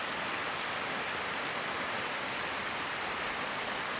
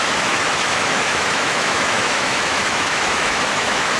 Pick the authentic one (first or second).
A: first